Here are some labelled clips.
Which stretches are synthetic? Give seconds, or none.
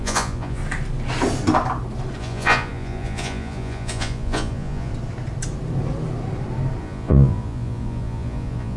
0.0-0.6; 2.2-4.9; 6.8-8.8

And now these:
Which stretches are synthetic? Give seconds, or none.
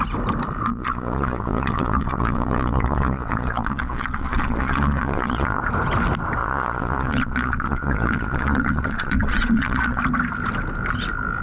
0.7-5.6; 6.4-10.0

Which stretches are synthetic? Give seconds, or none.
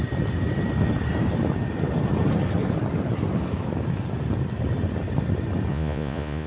5.7-6.5